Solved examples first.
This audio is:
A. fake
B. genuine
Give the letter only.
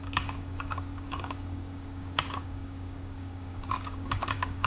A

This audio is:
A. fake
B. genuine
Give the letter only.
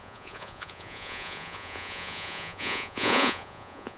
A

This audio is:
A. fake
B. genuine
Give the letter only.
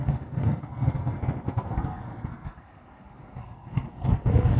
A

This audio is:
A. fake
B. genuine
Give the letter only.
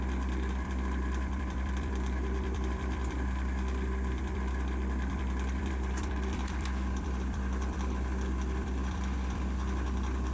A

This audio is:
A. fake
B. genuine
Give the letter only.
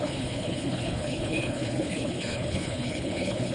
A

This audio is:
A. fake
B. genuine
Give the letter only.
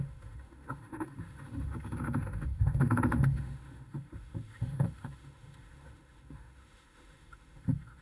A